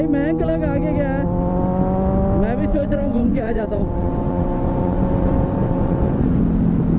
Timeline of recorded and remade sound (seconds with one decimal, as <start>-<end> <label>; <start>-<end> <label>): 0.0-2.7 recorded; 2.7-6.4 remade; 6.4-7.0 recorded